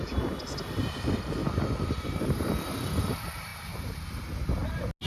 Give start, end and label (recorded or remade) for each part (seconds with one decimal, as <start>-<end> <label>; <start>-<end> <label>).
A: 0.0-1.4 recorded; 1.4-2.4 remade; 2.4-3.5 recorded; 3.5-4.0 remade; 4.0-5.1 recorded